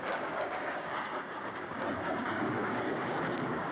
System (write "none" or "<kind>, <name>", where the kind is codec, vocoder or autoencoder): codec, DAC